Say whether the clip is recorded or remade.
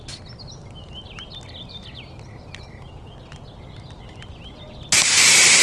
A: recorded